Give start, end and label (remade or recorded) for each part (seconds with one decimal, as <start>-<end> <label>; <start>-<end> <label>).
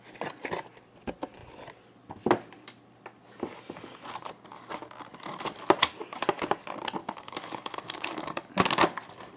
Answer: 0.0-7.0 recorded; 7.0-8.5 remade; 8.5-9.4 recorded